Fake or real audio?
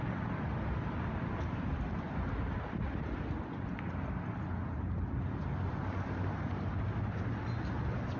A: real